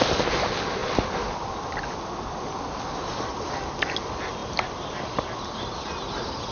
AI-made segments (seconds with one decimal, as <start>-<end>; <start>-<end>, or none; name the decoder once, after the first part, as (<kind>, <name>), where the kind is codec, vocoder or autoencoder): none